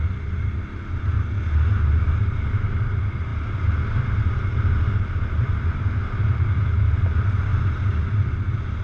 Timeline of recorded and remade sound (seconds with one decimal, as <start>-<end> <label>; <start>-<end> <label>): 0.0-7.5 recorded; 7.5-8.1 remade; 8.1-8.8 recorded